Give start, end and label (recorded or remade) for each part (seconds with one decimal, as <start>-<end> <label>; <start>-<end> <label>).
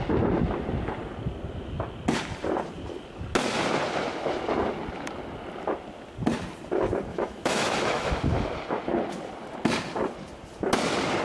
0.0-7.1 recorded; 7.1-8.1 remade; 8.1-11.2 recorded